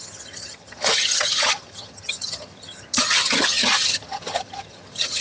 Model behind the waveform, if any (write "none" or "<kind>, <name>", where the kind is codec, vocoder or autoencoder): vocoder, HiFi-GAN